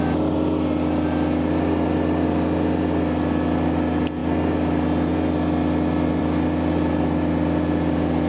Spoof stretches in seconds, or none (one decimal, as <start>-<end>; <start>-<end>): none